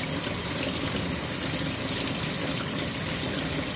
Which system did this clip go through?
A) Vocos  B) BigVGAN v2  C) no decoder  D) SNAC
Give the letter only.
C